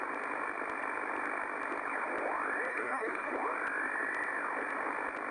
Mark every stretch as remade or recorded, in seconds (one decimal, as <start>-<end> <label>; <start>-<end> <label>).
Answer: 0.0-2.7 recorded; 2.7-3.3 remade; 3.3-5.3 recorded